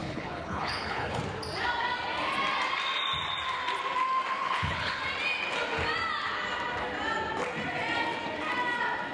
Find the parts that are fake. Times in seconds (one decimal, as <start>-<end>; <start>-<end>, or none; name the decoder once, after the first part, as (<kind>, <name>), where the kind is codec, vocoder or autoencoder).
0.0-1.2 (codec, HILCodec); 4.4-5.0